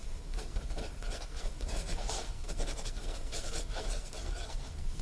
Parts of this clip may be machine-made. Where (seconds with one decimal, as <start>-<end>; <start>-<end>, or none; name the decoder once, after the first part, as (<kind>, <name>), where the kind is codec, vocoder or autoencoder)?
0.0-5.0 (codec, SNAC)